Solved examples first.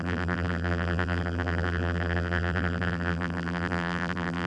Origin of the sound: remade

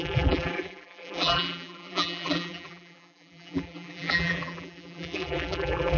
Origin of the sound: remade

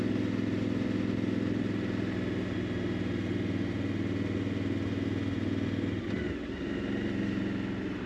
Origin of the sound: recorded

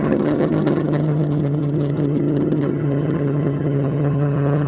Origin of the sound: remade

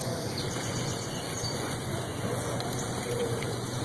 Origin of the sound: remade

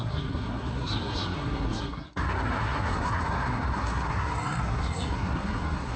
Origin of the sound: remade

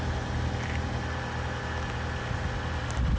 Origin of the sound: recorded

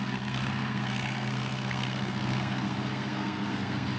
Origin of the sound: remade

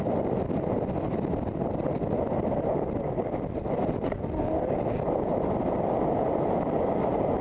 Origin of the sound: remade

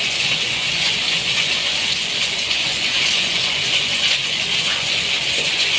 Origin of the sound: remade